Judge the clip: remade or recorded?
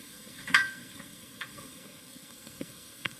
remade